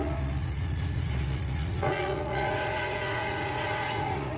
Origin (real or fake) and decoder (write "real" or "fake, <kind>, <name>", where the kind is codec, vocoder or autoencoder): fake, vocoder, Vocos